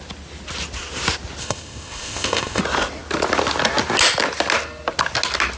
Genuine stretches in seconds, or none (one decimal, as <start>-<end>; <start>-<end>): 0.0-1.4; 2.6-5.6